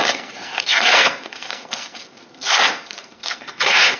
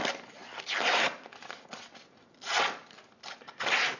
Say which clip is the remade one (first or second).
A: first